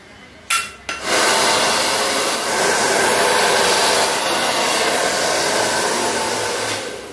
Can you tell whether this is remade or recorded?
recorded